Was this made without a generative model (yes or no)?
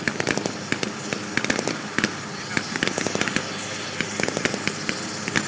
yes